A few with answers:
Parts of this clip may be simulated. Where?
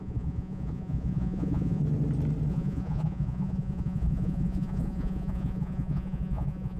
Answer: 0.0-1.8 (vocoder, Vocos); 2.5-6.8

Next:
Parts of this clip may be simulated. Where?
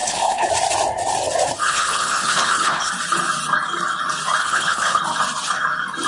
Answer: 0.0-0.5 (codec, HILCodec); 1.6-2.9; 4.4-5.0